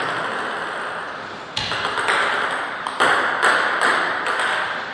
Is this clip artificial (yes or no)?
no